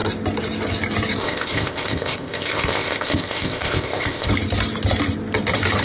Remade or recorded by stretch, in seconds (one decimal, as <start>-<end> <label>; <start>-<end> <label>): 0.0-1.2 recorded; 1.2-4.3 remade; 4.3-5.8 recorded